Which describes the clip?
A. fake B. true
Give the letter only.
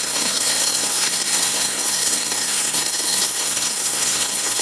A